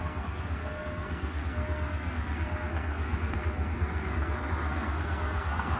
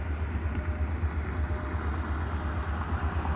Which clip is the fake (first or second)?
first